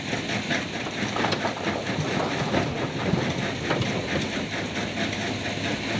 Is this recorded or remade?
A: recorded